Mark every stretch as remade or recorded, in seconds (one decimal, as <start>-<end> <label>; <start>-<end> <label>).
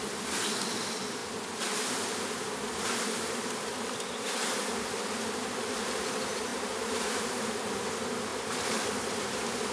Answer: 0.0-9.7 recorded